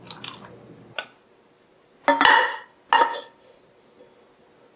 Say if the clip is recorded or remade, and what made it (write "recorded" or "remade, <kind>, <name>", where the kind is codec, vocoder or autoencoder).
recorded